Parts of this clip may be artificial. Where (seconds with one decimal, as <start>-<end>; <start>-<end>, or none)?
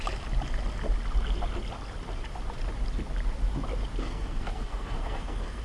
4.0-5.6